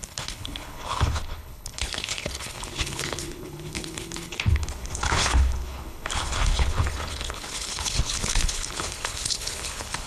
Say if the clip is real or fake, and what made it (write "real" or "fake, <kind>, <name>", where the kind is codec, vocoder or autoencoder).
fake, codec, HILCodec